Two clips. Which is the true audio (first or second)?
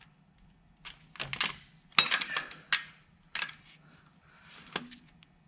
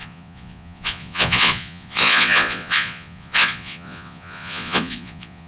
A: first